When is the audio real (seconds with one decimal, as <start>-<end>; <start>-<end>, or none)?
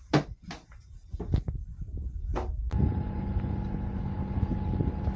0.0-5.2